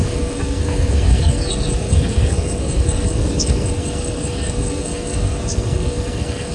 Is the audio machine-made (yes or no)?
yes